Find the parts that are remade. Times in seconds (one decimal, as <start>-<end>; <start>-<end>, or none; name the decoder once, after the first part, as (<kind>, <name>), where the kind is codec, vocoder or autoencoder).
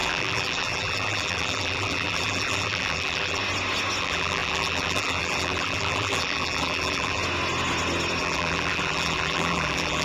0.0-3.4 (vocoder, BigVGAN v2); 4.0-7.2; 8.2-10.0